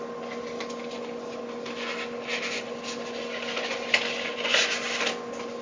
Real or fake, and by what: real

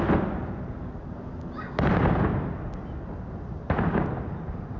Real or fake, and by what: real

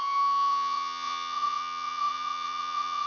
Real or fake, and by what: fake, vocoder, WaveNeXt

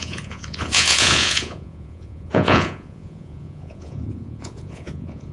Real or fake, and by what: fake, vocoder, Vocos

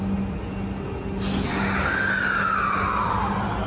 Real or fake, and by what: real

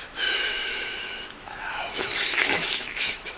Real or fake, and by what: fake, autoencoder, DAC-VAE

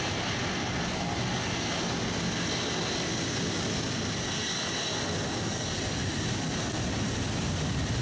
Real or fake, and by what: real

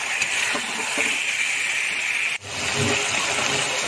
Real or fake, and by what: real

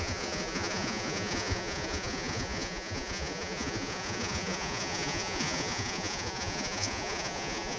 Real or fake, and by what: fake, vocoder, Vocos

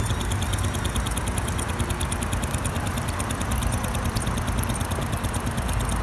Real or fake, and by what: real